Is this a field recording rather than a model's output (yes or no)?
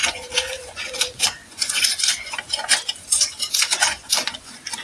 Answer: no